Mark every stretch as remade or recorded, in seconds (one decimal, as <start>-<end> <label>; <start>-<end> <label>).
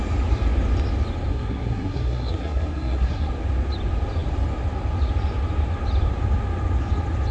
0.0-1.3 recorded; 1.3-3.3 remade; 3.3-7.3 recorded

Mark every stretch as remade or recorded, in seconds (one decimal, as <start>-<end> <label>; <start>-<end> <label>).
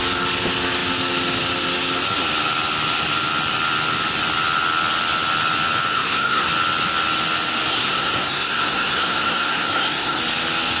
0.0-5.9 recorded; 5.9-6.5 remade; 6.5-7.7 recorded; 7.7-10.2 remade; 10.2-10.8 recorded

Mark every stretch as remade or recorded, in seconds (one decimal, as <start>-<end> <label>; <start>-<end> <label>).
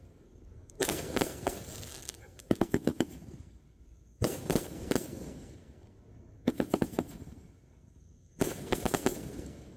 0.0-9.8 remade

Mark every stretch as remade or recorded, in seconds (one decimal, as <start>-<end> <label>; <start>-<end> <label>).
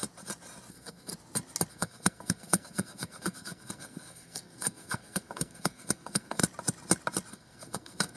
0.0-0.7 recorded; 0.7-1.1 remade; 1.1-1.7 recorded; 1.7-6.4 remade; 6.4-7.3 recorded; 7.3-8.2 remade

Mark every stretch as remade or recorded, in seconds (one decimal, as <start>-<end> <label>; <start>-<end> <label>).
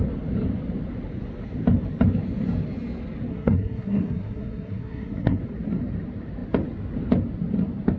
0.0-3.3 recorded; 3.3-5.4 remade; 5.4-8.0 recorded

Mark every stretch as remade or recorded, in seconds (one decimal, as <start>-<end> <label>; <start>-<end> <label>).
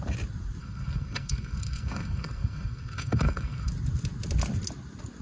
0.0-0.6 recorded; 0.6-3.7 remade; 3.7-5.2 recorded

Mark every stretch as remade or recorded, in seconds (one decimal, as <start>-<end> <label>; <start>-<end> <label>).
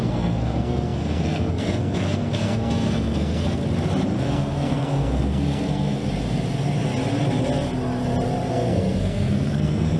0.0-3.6 remade; 3.6-4.2 recorded; 4.2-6.0 remade; 6.0-8.5 recorded; 8.5-10.0 remade